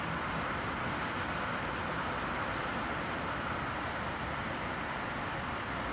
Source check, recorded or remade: recorded